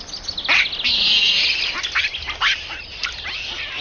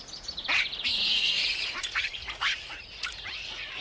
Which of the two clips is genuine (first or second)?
first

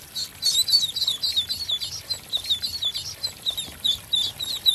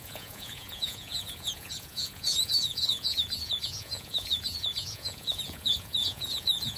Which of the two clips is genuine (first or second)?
first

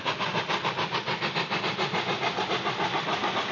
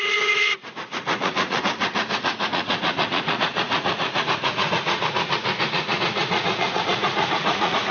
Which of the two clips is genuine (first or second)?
first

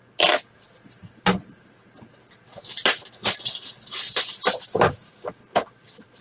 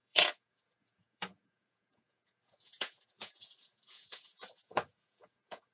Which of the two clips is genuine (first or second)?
first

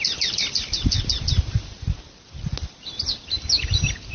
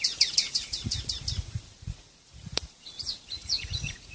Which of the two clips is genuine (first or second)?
first